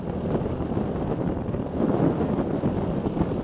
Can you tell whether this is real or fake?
real